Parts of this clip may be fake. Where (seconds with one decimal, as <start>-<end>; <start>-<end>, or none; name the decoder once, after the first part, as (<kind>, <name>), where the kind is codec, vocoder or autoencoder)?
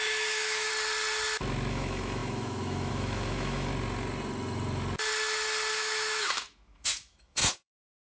0.0-0.7 (autoencoder, DAC-VAE); 1.7-3.7; 5.7-8.1